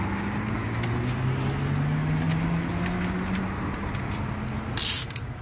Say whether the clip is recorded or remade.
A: recorded